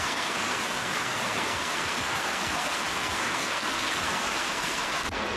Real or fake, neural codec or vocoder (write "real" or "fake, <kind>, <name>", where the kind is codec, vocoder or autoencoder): fake, codec, SNAC